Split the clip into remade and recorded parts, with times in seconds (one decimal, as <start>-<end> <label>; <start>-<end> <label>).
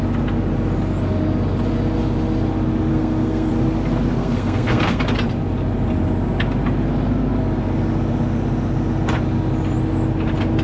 0.0-2.9 recorded; 2.9-3.5 remade; 3.5-4.2 recorded; 4.2-5.0 remade; 5.0-10.6 recorded